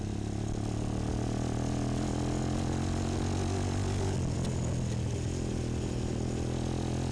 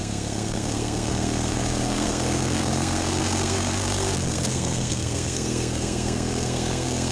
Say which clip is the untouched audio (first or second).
first